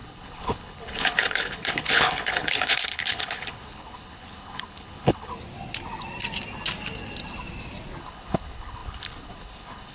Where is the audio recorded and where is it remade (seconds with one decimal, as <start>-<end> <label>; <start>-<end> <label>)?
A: 0.0-5.3 remade; 5.3-8.0 recorded; 8.0-9.9 remade